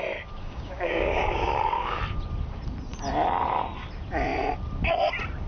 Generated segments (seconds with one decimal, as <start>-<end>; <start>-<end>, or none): 0.4-2.0